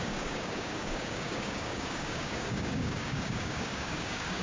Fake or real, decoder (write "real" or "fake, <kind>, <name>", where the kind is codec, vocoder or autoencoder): fake, codec, DAC